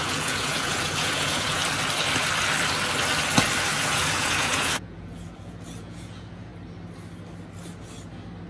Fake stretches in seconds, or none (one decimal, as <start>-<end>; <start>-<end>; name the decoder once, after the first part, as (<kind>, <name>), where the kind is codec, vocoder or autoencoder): 0.0-1.6 (vocoder, Vocos); 3.8-6.5